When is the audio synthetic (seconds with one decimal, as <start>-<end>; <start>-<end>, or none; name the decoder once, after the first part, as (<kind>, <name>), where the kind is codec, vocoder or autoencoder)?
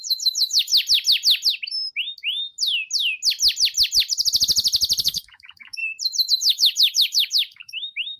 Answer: 0.0-0.7 (autoencoder, DAC-VAE); 5.0-5.8; 6.3-8.2